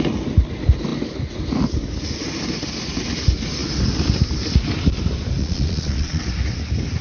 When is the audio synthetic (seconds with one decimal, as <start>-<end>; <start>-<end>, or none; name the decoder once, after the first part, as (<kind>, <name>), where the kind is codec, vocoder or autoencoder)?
5.4-6.2 (vocoder, Vocos)